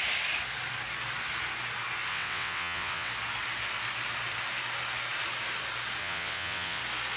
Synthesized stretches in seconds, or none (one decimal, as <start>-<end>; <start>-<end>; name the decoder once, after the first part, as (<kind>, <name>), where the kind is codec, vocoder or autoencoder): 2.1-3.1 (vocoder, WaveNeXt); 6.0-6.8